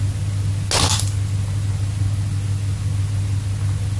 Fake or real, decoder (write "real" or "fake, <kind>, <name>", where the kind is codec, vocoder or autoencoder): real